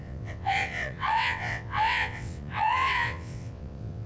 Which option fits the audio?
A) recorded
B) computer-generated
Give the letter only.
B